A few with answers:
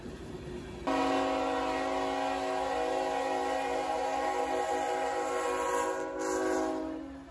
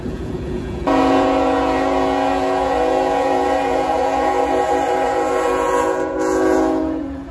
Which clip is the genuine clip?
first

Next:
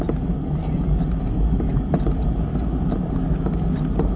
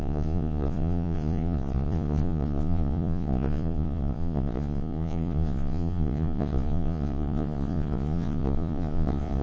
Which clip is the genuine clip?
first